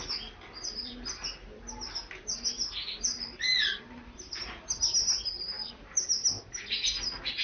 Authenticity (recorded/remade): recorded